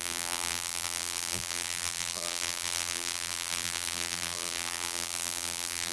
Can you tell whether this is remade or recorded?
remade